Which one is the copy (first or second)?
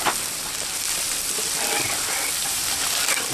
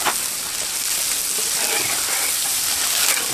first